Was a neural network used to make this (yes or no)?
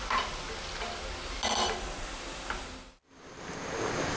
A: no